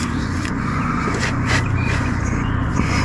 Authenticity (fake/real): fake